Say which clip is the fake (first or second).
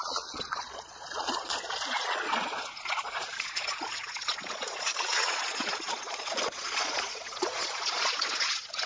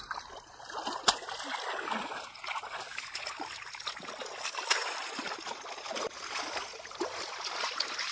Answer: first